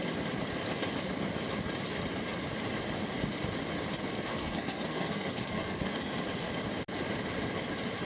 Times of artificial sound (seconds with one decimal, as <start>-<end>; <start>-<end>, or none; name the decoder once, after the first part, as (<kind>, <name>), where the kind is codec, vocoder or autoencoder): 4.3-6.1 (codec, SNAC)